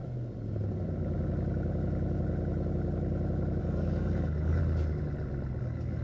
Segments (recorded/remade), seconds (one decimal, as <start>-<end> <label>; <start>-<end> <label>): 0.0-3.6 recorded; 3.6-4.6 remade; 4.6-5.6 recorded; 5.6-6.0 remade